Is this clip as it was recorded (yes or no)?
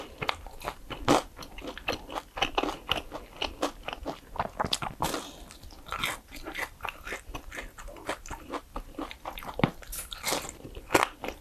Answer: yes